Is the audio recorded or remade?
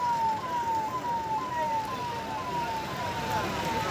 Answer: recorded